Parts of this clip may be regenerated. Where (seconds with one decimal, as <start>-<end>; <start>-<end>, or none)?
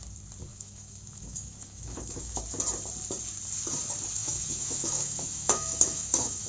0.5-2.4; 4.2-6.5